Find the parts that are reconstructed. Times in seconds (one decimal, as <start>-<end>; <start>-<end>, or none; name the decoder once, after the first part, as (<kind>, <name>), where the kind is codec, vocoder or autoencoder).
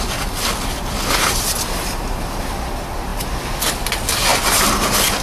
none